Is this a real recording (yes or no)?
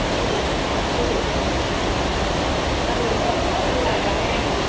yes